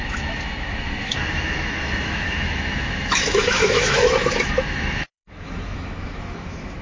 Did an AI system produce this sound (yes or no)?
yes